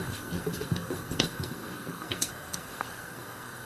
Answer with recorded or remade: remade